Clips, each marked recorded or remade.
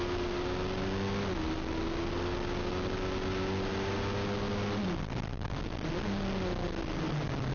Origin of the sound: recorded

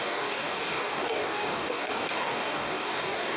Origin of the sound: remade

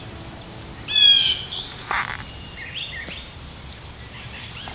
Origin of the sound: recorded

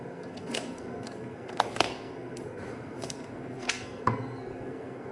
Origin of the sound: remade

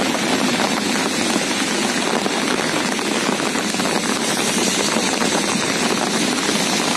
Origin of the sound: recorded